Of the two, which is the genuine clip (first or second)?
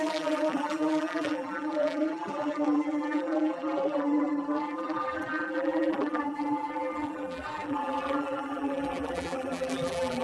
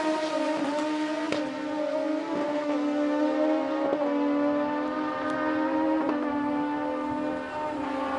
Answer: second